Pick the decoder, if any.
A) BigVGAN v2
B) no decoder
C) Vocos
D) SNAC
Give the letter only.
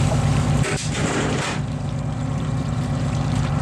A